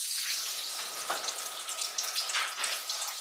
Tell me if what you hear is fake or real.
fake